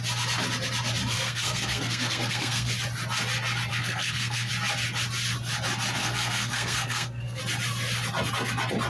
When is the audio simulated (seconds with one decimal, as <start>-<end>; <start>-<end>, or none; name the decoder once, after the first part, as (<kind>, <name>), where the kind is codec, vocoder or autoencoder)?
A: 1.1-2.7 (codec, SNAC); 3.7-4.5; 6.0-7.4